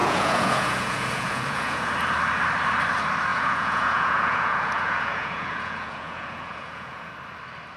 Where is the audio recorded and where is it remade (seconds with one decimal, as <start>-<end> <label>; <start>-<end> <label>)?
0.0-1.9 remade; 1.9-3.3 recorded; 3.3-7.1 remade; 7.1-7.8 recorded